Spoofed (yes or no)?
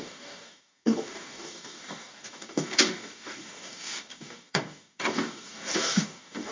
yes